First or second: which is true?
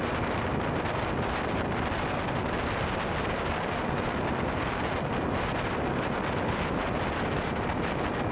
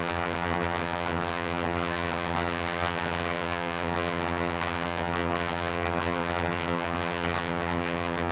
first